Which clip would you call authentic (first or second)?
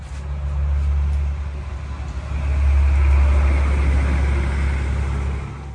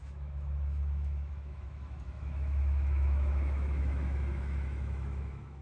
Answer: first